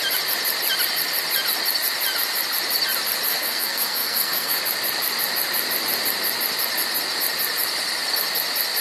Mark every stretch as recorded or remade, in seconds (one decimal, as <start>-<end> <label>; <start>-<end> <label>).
0.0-3.3 recorded; 3.3-4.6 remade; 4.6-8.8 recorded